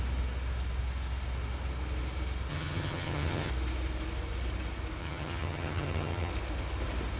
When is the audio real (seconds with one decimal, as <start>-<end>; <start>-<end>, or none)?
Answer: 0.0-2.5; 3.5-5.0; 6.3-7.2